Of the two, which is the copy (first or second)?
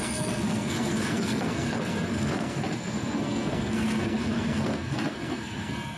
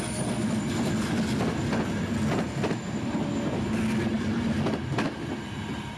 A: first